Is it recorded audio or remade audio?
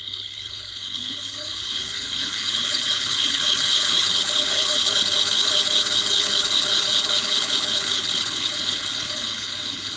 remade